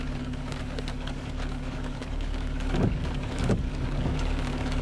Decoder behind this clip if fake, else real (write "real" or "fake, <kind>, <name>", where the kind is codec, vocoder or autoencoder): fake, codec, DAC